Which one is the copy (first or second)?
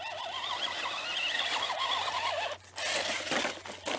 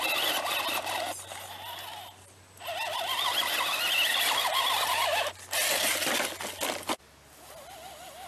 first